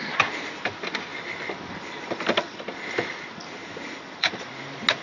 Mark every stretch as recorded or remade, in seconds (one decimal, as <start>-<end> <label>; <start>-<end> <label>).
0.0-1.1 recorded; 1.1-3.1 remade; 3.1-3.6 recorded; 3.6-4.5 remade; 4.5-5.0 recorded